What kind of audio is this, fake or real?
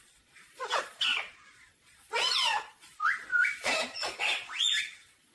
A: fake